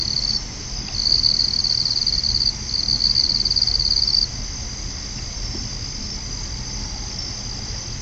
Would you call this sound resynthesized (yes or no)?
no